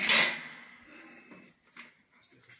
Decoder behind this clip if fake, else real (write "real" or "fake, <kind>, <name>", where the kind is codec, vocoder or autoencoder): real